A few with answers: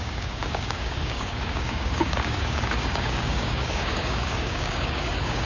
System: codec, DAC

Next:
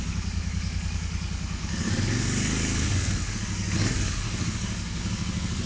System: codec, DAC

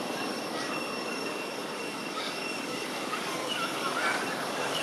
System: codec, DAC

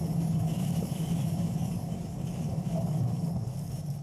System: codec, DAC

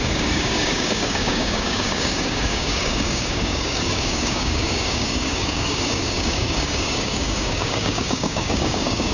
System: codec, DAC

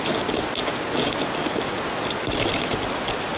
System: none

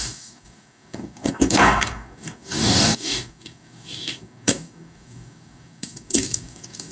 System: codec, DAC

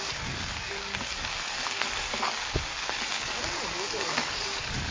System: codec, DAC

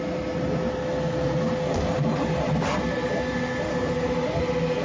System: none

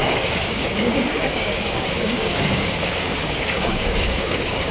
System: codec, DAC